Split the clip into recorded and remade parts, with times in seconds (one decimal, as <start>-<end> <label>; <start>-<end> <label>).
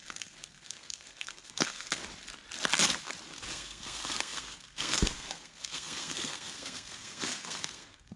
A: 0.0-2.0 remade; 2.0-3.5 recorded; 3.5-8.2 remade